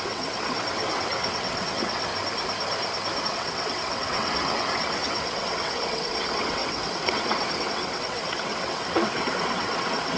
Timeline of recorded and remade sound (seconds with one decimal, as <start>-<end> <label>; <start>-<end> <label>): 0.0-2.1 remade; 2.1-3.2 recorded; 3.2-10.2 remade